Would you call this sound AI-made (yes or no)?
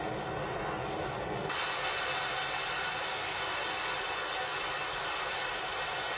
no